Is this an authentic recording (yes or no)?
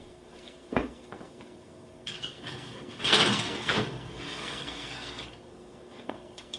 no